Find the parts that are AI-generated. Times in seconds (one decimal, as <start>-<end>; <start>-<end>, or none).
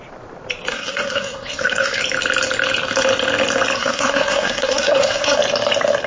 0.7-2.0; 3.8-5.4